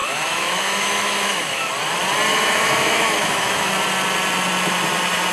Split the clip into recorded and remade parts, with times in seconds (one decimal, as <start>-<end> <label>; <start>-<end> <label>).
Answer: 0.0-1.7 remade; 1.7-2.3 recorded; 2.3-3.7 remade; 3.7-5.3 recorded